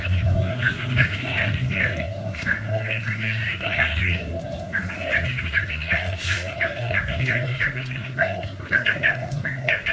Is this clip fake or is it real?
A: fake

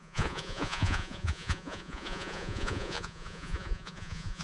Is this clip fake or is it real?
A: fake